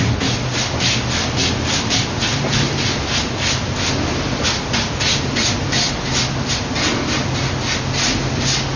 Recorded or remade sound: recorded